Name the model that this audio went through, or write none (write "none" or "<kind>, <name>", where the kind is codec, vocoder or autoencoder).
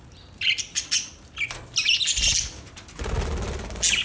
none